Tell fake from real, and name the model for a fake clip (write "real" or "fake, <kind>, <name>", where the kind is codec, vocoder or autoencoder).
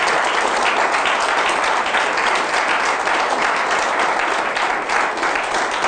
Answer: real